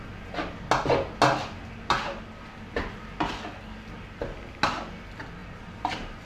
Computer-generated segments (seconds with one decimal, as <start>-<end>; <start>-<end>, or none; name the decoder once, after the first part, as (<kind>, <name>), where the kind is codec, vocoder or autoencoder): 5.4-6.3 (vocoder, BigVGAN v2)